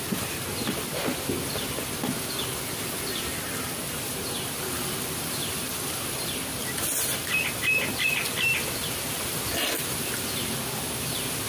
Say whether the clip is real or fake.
real